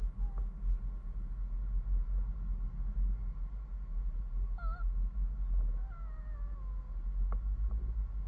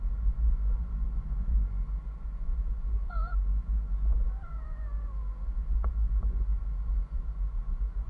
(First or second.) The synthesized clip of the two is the second